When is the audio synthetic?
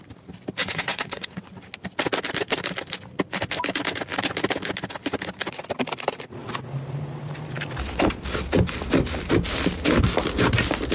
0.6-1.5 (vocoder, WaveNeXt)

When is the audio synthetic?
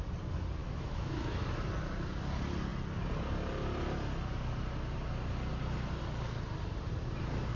0.6-1.5 (autoencoder, DAC-VAE)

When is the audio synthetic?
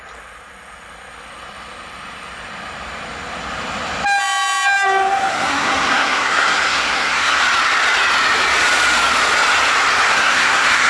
5.3-7.4 (codec, SNAC); 10.1-10.9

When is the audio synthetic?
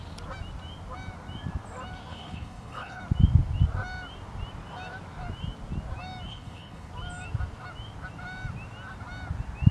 2.1-3.0 (codec, HILCodec); 6.3-6.9